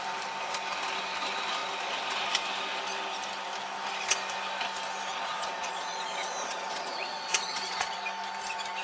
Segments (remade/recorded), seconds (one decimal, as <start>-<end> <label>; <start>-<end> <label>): 0.0-5.1 recorded; 5.1-8.0 remade; 8.0-8.8 recorded